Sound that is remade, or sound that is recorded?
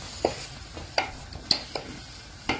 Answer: recorded